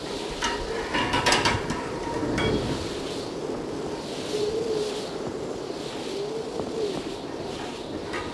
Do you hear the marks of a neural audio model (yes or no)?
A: no